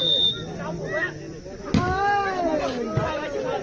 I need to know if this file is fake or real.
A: real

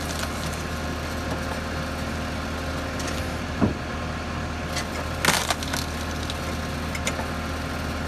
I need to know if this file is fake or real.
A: real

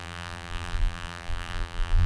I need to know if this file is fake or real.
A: fake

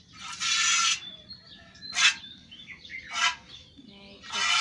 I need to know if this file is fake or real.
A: real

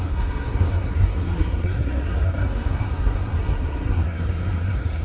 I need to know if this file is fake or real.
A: fake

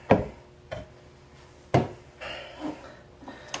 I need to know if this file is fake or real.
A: real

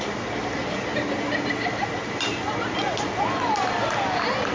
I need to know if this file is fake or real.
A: fake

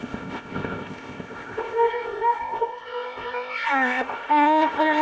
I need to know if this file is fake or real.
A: fake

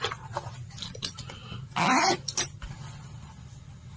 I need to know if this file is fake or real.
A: real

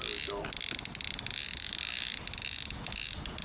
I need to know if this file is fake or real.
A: real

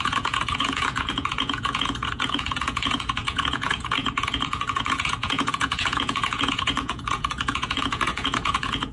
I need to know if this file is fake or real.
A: fake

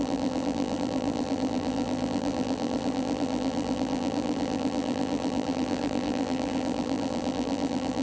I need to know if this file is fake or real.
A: fake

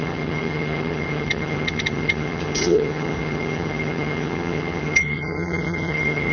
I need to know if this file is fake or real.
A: fake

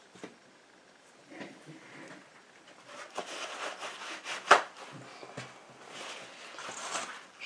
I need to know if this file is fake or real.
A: real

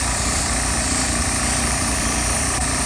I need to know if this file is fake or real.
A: fake